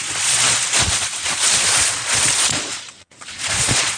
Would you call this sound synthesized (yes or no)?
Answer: yes